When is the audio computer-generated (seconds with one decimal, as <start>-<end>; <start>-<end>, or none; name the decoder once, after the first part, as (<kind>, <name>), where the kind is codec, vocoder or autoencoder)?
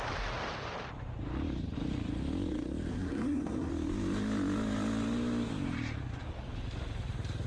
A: 2.9-3.7 (codec, SNAC)